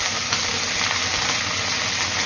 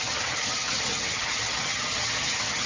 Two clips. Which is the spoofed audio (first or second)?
second